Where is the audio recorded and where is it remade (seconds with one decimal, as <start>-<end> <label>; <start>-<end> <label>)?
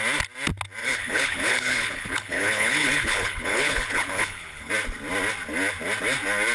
0.0-0.8 recorded; 0.8-4.7 remade; 4.7-6.5 recorded